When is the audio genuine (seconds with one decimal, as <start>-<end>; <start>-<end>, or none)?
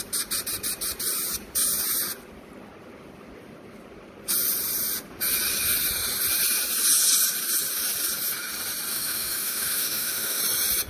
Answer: 0.0-8.9; 10.4-10.9